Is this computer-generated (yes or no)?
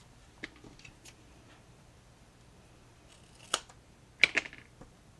no